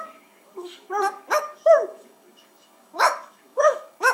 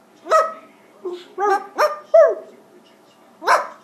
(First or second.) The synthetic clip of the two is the first